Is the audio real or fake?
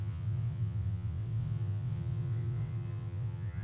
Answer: fake